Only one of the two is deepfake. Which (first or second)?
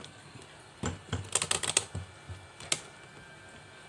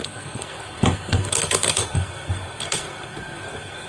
second